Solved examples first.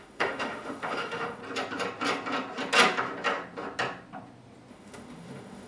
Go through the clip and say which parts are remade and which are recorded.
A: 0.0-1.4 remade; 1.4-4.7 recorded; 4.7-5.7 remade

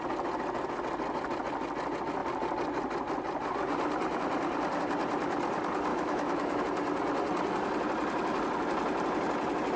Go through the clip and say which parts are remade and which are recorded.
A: 0.0-5.9 recorded; 5.9-6.6 remade; 6.6-9.8 recorded

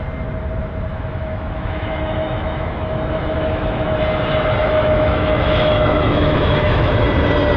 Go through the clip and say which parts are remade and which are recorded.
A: 0.0-0.9 recorded; 0.9-4.0 remade; 4.0-4.6 recorded; 4.6-6.9 remade; 6.9-7.6 recorded

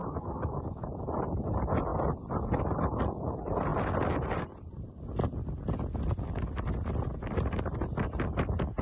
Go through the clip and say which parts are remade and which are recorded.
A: 0.0-0.9 remade; 0.9-8.8 recorded

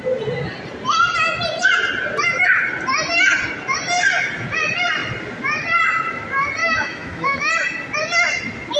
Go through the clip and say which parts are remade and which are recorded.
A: 0.0-6.6 recorded; 6.6-7.5 remade; 7.5-8.8 recorded

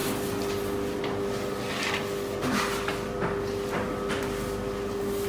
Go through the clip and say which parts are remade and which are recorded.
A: 0.0-5.3 recorded

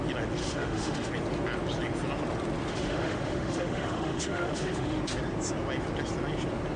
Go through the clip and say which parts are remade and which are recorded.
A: 0.0-0.4 recorded; 0.4-1.1 remade; 1.1-2.7 recorded; 2.7-5.0 remade; 5.0-6.8 recorded

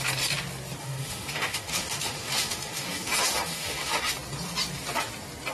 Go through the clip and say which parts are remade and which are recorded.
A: 0.0-0.8 recorded; 0.8-4.1 remade; 4.1-5.5 recorded